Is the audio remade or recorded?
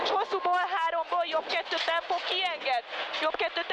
recorded